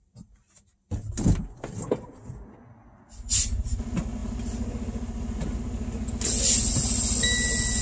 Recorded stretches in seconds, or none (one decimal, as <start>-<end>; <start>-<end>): 0.0-7.8